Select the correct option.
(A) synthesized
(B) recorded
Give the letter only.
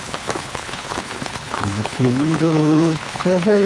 A